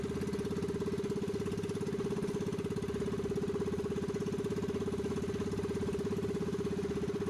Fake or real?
real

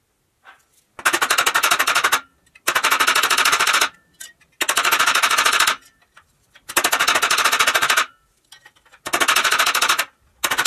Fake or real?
real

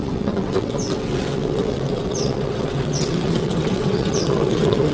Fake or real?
fake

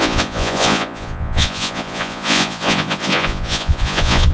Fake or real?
fake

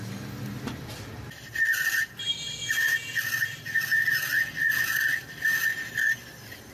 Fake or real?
real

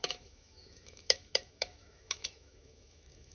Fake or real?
fake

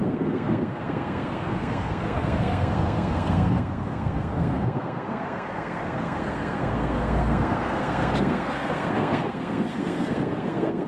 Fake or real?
fake